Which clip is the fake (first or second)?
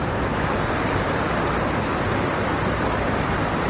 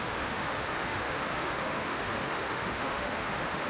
second